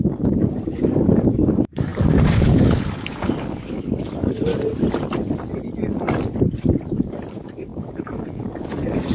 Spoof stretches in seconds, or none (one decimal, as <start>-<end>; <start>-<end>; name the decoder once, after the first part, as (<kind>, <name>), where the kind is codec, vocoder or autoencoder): 0.0-4.5 (codec, DAC); 7.3-9.1